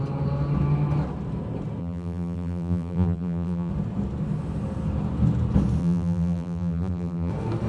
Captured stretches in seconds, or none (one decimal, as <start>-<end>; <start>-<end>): 0.0-1.8; 3.7-5.8; 7.3-7.7